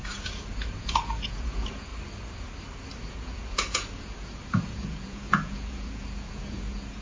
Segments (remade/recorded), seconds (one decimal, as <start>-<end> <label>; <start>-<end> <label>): 0.0-1.9 remade; 1.9-3.0 recorded; 3.0-7.0 remade